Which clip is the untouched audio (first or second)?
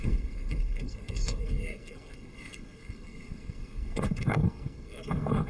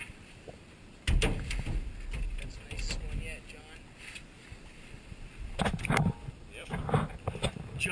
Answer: second